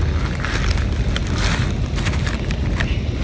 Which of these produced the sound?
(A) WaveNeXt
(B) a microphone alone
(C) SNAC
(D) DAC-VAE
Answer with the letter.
B